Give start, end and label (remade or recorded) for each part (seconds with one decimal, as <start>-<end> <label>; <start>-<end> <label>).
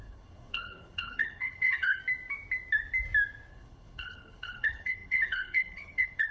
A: 0.0-2.0 remade; 2.0-3.5 recorded; 3.5-6.3 remade